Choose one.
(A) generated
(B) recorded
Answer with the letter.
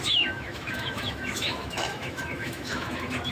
A